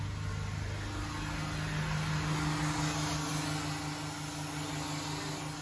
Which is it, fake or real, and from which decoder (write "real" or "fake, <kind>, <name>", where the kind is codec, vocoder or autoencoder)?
real